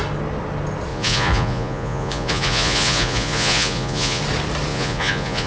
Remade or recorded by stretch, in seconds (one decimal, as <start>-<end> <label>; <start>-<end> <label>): 0.0-0.9 recorded; 0.9-4.2 remade; 4.2-4.7 recorded; 4.7-5.5 remade